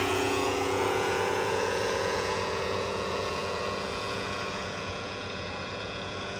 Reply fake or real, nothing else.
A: fake